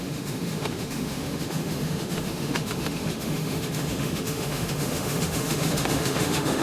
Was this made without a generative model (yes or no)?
no